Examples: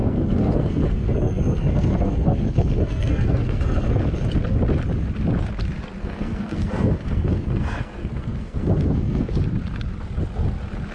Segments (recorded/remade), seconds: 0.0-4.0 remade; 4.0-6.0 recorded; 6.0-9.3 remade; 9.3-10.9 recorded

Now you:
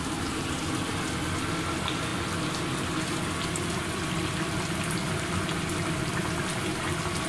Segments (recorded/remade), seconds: 0.0-7.3 recorded

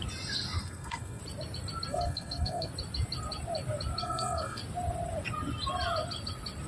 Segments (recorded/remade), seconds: 0.0-0.6 recorded; 0.6-1.2 remade; 1.2-1.9 recorded; 1.9-2.7 remade; 2.7-4.0 recorded; 4.0-4.6 remade; 4.6-6.7 recorded

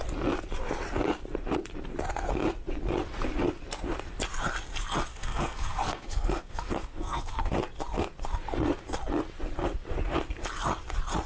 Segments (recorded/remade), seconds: 0.0-5.1 recorded; 5.1-7.5 remade; 7.5-11.3 recorded

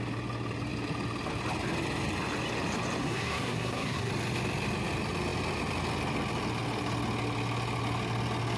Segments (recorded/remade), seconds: 0.0-3.0 recorded; 3.0-4.1 remade; 4.1-8.6 recorded

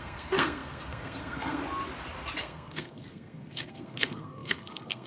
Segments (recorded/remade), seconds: 0.0-1.6 remade; 1.6-2.4 recorded; 2.4-5.1 remade

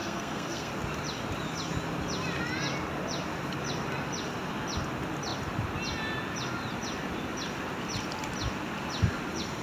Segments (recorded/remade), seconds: 0.0-0.7 remade; 0.7-9.6 recorded